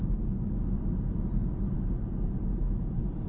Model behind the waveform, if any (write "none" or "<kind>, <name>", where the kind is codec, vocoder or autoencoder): none